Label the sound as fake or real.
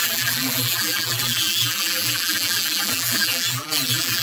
fake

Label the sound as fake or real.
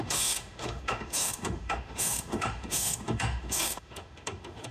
fake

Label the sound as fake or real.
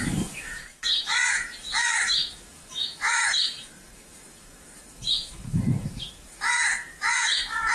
fake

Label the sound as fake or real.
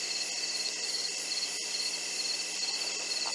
fake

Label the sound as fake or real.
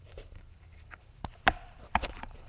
fake